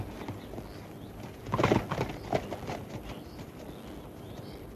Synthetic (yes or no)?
no